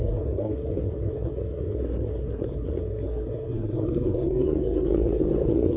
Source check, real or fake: fake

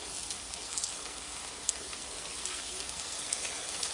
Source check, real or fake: fake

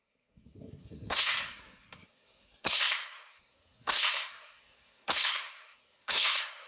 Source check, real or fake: fake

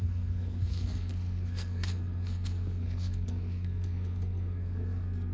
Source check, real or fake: fake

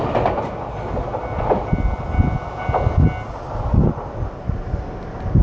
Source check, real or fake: real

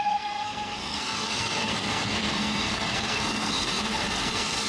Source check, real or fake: fake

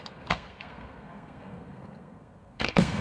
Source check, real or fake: fake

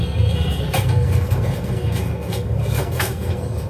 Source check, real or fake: fake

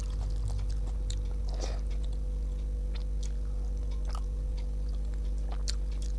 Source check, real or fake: real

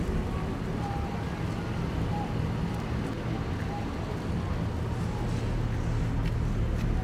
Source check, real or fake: real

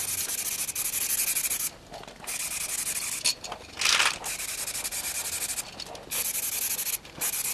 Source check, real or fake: real